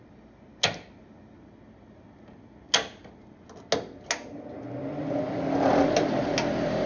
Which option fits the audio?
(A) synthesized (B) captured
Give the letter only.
B